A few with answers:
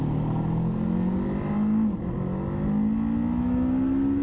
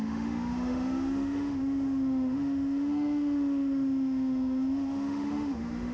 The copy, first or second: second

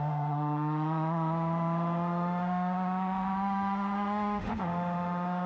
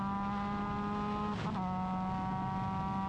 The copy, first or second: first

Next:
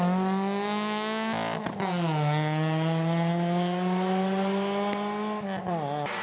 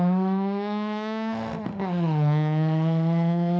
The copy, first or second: second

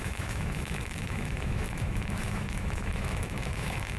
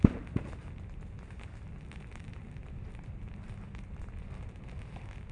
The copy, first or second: first